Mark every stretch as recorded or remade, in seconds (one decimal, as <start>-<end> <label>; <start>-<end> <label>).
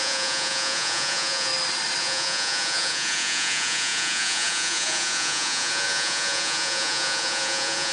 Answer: 0.0-1.5 remade; 1.5-2.0 recorded; 2.0-7.9 remade